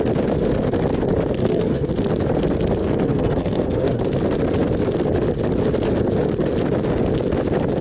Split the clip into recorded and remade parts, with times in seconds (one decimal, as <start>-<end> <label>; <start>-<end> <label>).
0.0-1.4 recorded; 1.4-1.9 remade; 1.9-2.8 recorded; 2.8-4.0 remade; 4.0-7.8 recorded